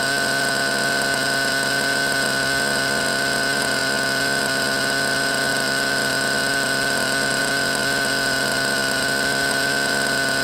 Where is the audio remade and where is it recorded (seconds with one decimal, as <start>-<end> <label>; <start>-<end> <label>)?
0.0-5.5 recorded; 5.5-7.4 remade; 7.4-10.4 recorded